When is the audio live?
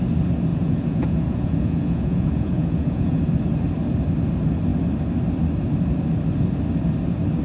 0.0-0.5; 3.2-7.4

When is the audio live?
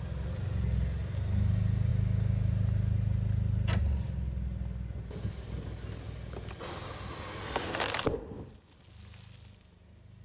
0.0-10.2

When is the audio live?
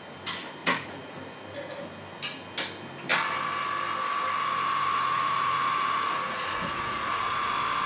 0.0-0.6; 1.1-4.9; 7.5-7.9